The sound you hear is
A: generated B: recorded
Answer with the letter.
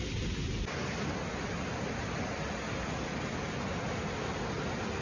B